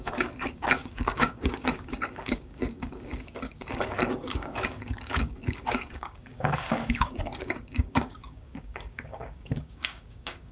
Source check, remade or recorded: remade